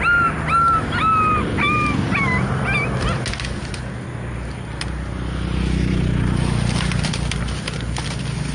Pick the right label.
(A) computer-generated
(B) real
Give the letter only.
B